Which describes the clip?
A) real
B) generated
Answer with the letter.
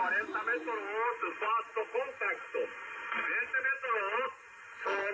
A